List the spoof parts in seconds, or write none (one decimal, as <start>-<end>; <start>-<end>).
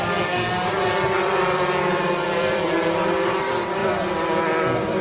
1.3-2.6